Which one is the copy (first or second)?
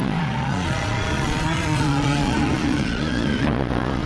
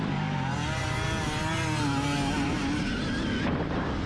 first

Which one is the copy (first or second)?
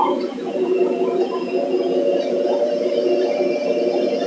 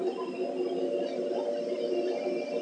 first